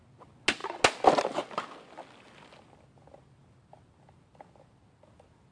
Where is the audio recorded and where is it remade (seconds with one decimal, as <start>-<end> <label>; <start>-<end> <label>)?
0.0-5.5 recorded

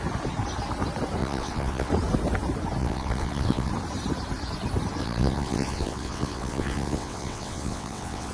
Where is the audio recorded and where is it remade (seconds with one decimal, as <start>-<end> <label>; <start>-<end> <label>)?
0.0-1.2 recorded; 1.2-1.9 remade; 1.9-2.8 recorded; 2.8-3.7 remade; 3.7-5.0 recorded; 5.0-8.3 remade

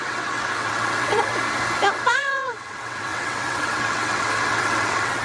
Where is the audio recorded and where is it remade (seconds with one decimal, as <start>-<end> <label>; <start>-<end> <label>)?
0.0-1.3 remade; 1.3-1.9 recorded; 1.9-5.2 remade

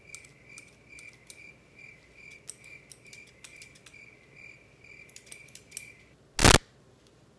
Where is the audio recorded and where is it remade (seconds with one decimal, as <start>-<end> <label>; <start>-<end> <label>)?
0.0-7.4 recorded

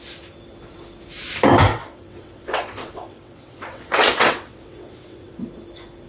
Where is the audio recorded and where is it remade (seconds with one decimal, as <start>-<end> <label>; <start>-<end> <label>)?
0.0-1.7 recorded; 1.7-5.4 remade; 5.4-6.1 recorded

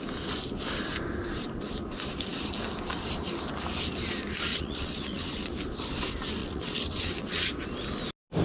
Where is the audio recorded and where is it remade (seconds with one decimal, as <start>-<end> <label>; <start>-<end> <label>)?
0.0-4.5 recorded; 4.5-5.5 remade; 5.5-6.4 recorded; 6.4-7.5 remade; 7.5-8.4 recorded